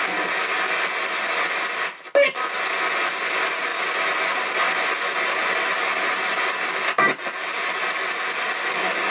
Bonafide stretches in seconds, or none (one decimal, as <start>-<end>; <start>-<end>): 0.0-9.1